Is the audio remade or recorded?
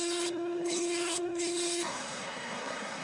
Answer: remade